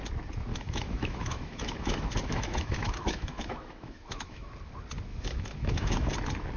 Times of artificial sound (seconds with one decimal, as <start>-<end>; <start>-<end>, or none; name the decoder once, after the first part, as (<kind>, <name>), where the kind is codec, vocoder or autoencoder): 0.5-4.5 (autoencoder, DAC-VAE); 5.1-6.1